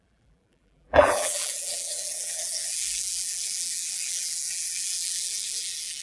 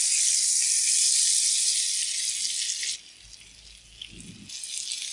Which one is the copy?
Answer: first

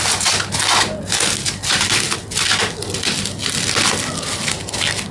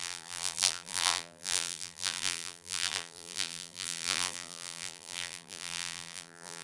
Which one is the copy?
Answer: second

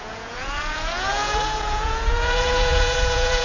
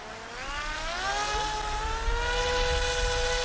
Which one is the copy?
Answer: first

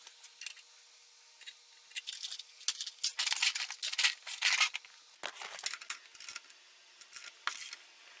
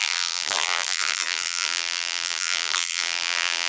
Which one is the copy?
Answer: second